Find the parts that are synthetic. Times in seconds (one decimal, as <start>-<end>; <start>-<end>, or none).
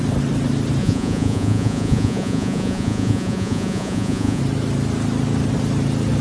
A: 0.8-4.4